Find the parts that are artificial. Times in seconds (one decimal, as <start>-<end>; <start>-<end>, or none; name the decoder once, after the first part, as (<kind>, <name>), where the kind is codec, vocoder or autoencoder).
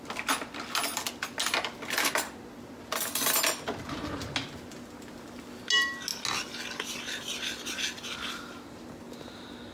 none